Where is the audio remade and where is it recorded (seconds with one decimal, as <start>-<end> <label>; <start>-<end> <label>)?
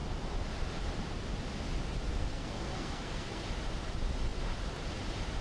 0.0-2.1 recorded; 2.1-3.4 remade; 3.4-5.4 recorded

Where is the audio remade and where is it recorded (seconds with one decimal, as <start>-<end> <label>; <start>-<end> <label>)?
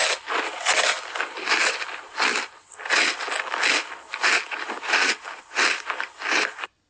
0.0-6.9 recorded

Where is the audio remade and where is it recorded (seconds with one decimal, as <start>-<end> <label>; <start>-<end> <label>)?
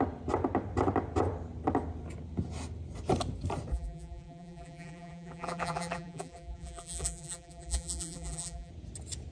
0.0-3.7 recorded; 3.7-8.7 remade; 8.7-9.3 recorded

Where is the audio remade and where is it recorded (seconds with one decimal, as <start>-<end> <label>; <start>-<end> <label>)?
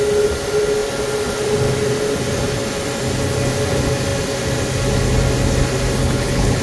0.0-6.0 recorded; 6.0-6.6 remade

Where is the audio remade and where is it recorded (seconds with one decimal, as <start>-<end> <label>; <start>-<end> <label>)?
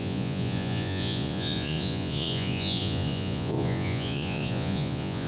0.0-5.3 remade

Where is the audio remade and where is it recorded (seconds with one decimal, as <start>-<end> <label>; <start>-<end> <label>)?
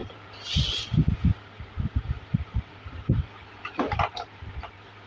0.0-2.3 recorded; 2.3-4.4 remade; 4.4-5.1 recorded